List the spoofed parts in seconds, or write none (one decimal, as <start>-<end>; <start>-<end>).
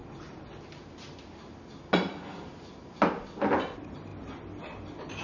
none